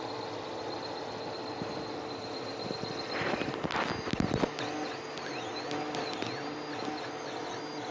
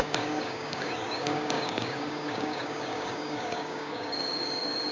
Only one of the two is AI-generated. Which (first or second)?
second